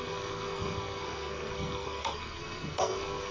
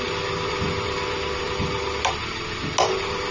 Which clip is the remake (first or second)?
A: first